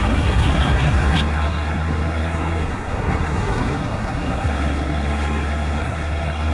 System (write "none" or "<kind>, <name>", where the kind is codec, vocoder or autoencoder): codec, SNAC